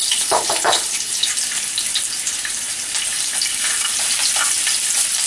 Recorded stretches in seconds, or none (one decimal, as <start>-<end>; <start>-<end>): 1.3-5.3

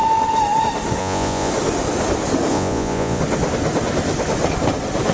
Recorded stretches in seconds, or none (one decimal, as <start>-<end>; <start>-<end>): 0.0-1.0; 1.5-2.5; 3.2-5.1

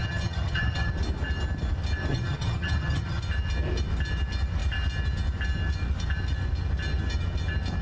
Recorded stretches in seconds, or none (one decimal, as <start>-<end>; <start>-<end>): 0.9-2.1; 3.2-7.8

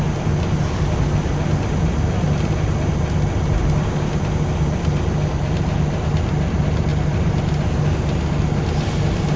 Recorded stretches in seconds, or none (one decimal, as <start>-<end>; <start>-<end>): 0.0-9.4

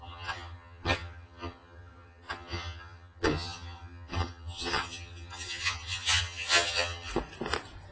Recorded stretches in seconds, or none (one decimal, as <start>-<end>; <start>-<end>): 7.1-7.9

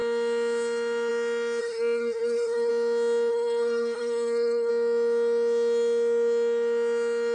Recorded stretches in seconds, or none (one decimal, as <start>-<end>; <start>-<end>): 0.0-1.6; 2.7-3.3; 4.7-7.3

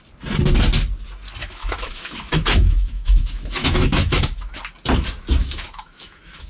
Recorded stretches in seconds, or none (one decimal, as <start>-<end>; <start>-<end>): 0.0-1.4; 4.6-5.4